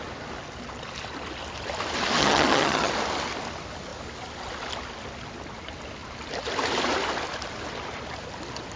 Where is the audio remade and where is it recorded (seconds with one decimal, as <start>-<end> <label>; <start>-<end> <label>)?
0.0-2.2 recorded; 2.2-2.9 remade; 2.9-8.8 recorded